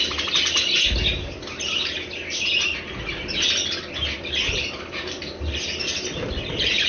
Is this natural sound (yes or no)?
yes